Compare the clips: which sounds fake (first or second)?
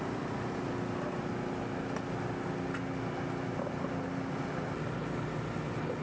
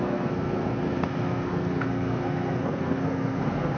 second